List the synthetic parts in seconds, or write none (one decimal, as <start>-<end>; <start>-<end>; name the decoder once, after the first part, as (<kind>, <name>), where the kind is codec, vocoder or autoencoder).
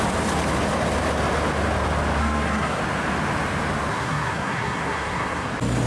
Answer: 2.2-2.8 (codec, SNAC); 3.9-5.5